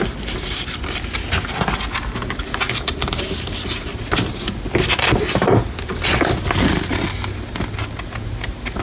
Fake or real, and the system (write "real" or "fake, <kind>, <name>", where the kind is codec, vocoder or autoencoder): real